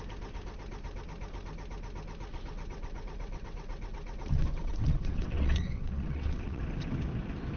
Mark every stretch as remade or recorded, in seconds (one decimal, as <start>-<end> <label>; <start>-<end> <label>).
0.0-2.3 recorded; 2.3-6.6 remade; 6.6-7.6 recorded